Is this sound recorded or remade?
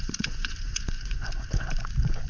remade